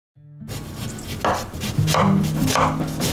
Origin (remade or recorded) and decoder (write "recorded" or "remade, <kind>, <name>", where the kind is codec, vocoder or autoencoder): recorded